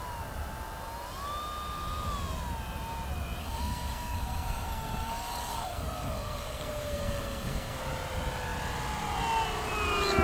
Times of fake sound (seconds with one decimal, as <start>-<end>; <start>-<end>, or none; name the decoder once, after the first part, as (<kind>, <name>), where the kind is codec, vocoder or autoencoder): 3.4-7.8 (codec, SNAC)